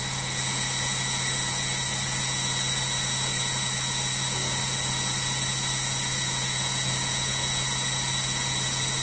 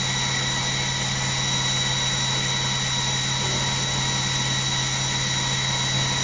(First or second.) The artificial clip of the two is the first